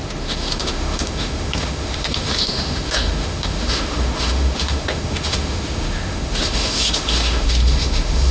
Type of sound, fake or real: fake